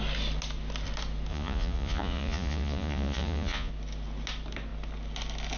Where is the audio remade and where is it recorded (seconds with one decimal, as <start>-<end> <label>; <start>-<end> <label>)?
0.0-1.3 recorded; 1.3-3.7 remade; 3.7-5.6 recorded